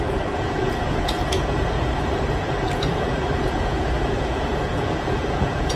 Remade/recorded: remade